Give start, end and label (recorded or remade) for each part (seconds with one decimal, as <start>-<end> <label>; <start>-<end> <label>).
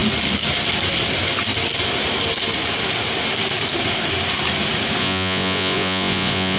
0.0-5.0 recorded; 5.0-6.6 remade